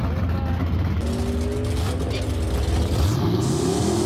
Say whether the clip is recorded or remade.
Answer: recorded